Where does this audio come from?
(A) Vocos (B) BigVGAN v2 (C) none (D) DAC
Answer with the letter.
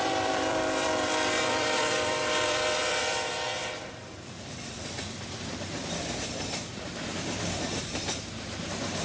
B